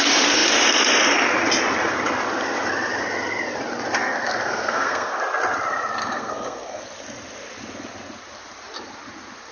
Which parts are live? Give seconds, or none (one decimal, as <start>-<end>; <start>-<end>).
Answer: 0.0-4.0; 5.2-6.0; 6.8-9.5